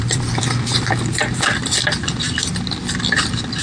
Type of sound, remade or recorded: remade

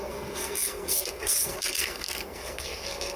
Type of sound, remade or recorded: remade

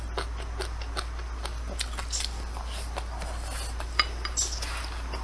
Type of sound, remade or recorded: recorded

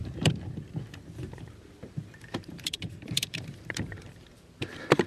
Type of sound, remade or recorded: remade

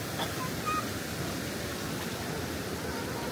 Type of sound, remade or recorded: recorded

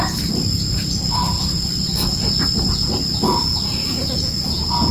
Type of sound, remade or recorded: recorded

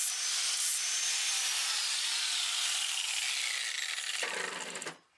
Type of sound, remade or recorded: recorded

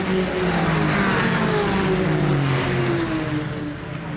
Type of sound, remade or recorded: recorded